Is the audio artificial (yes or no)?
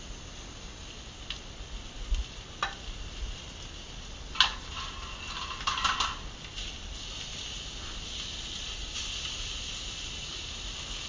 no